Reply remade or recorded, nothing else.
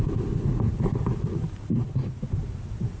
recorded